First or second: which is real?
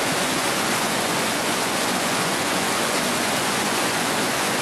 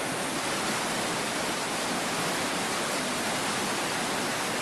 second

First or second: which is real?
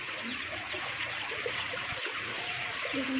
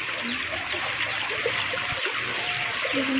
second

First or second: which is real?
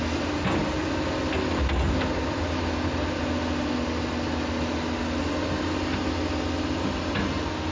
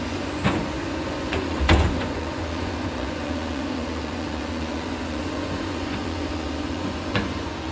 first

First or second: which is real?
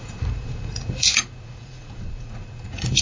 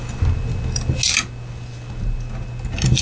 second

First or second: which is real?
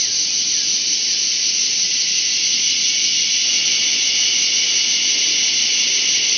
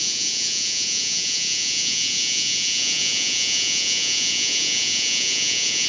first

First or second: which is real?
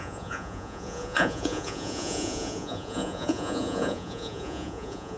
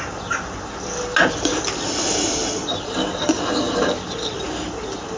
second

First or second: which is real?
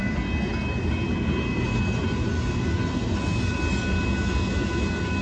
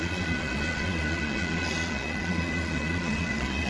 first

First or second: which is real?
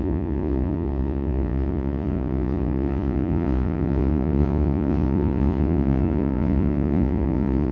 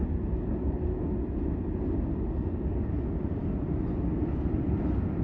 second